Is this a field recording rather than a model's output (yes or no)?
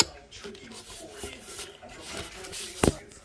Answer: yes